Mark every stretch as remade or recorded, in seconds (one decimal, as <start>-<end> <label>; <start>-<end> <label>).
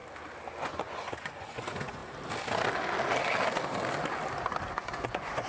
0.0-0.6 recorded; 0.6-2.0 remade; 2.0-4.7 recorded; 4.7-5.5 remade